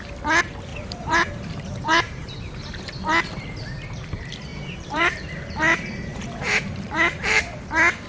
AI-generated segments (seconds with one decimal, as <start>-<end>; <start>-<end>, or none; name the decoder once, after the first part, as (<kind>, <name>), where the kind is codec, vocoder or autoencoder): 0.7-2.7 (vocoder, BigVGAN v2); 4.5-5.2; 6.1-6.6